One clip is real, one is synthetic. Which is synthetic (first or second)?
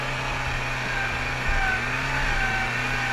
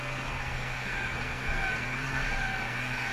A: second